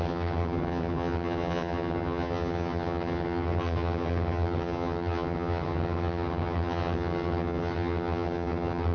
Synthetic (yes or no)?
yes